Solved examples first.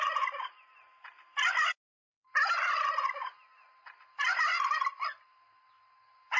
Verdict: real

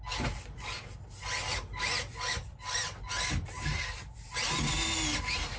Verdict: real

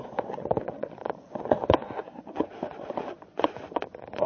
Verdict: fake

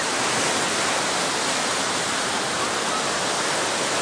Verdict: real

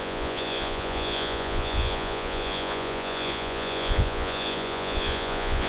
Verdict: fake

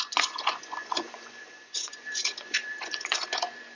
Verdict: fake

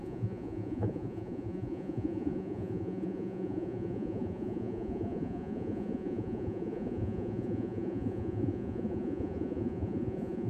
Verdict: fake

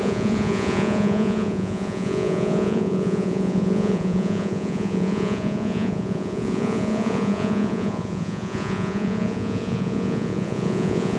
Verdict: fake